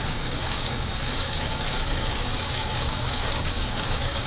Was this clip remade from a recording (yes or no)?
yes